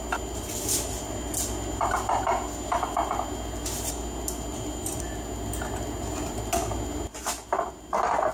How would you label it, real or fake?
real